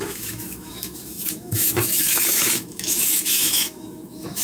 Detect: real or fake fake